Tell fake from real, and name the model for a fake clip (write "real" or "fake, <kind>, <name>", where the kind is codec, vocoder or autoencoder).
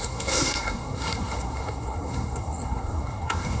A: fake, codec, SNAC